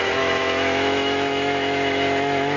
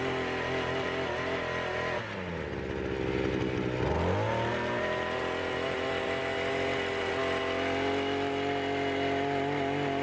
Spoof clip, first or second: first